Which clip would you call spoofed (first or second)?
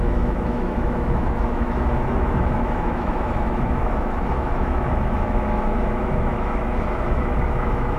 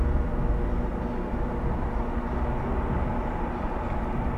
first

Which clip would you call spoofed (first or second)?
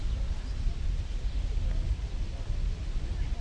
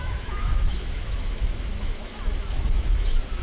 second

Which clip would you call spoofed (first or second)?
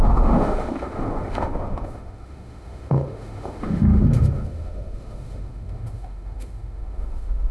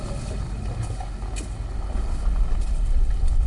first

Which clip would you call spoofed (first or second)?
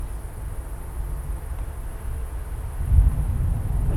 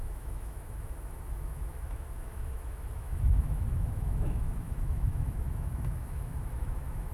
second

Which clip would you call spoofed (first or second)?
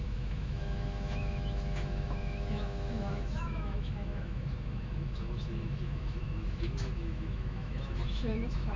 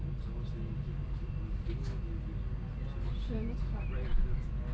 first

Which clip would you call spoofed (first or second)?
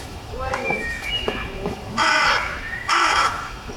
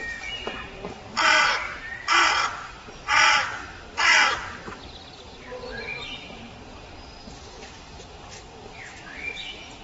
first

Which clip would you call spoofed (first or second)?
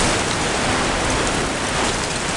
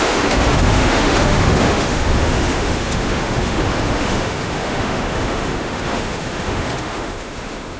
second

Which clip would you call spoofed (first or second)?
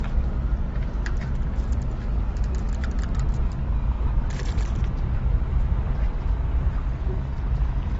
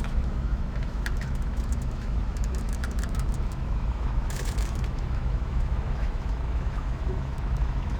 second